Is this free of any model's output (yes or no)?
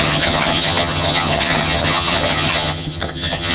no